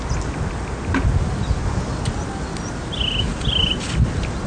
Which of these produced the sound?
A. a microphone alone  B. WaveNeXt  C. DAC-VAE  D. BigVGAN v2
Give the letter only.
A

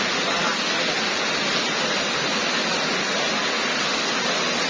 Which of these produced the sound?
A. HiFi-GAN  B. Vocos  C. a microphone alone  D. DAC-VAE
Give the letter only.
C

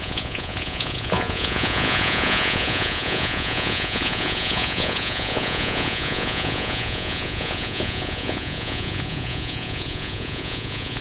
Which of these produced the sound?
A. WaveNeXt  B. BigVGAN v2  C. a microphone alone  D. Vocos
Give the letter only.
D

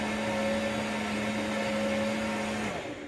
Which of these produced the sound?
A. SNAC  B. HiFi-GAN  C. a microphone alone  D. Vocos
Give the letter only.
C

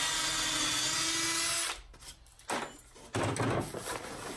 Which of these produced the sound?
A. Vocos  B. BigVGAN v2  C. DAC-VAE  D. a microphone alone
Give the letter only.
D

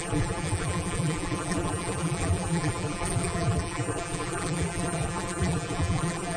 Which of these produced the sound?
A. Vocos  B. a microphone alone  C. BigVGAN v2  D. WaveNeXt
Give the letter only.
C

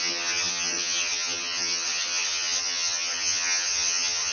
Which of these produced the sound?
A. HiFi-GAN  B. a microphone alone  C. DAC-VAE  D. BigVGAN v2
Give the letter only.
A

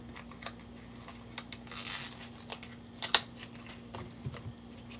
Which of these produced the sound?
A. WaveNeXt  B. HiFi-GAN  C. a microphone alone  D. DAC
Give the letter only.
C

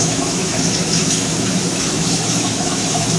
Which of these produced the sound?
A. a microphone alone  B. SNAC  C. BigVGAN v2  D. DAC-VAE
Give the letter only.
D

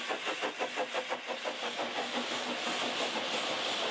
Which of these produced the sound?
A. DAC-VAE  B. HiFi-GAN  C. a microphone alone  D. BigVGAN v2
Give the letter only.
C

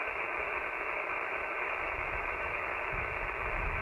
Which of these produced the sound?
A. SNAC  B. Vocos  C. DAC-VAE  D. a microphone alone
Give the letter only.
C